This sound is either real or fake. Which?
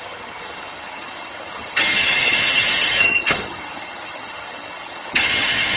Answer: fake